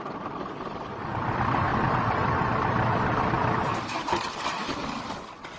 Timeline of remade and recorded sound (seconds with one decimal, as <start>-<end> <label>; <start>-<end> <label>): 0.0-1.7 recorded; 1.7-5.1 remade; 5.1-5.6 recorded